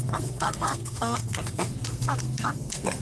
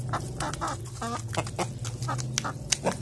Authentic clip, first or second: second